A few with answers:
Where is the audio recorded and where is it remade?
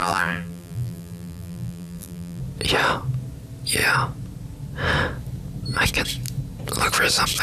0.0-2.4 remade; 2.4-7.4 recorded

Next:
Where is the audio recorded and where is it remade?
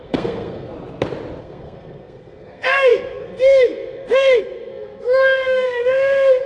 0.0-0.7 remade; 0.7-1.4 recorded; 1.4-6.5 remade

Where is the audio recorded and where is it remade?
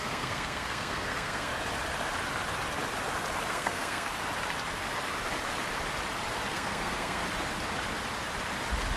0.0-1.5 remade; 1.5-3.5 recorded; 3.5-4.1 remade; 4.1-6.5 recorded; 6.5-7.2 remade; 7.2-9.0 recorded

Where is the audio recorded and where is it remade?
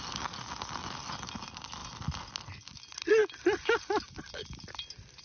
0.0-5.2 recorded